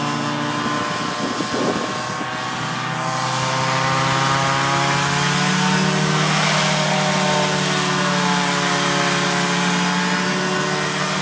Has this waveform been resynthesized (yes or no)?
no